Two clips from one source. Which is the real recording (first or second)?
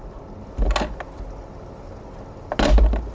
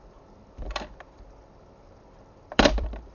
first